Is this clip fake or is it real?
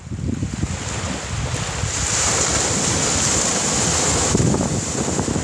real